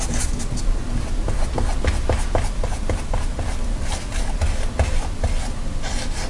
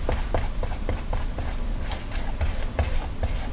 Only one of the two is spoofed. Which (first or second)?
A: second